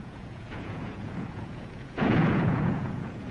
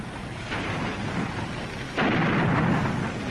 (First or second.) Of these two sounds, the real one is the second